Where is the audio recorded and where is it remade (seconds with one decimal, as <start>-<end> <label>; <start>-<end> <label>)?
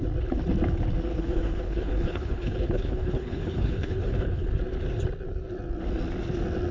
0.0-1.1 recorded; 1.1-4.6 remade; 4.6-6.7 recorded